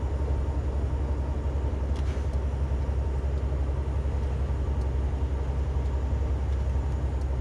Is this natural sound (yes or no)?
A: yes